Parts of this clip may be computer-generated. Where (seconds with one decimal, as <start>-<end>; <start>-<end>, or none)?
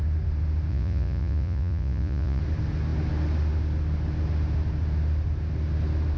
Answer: 0.7-2.4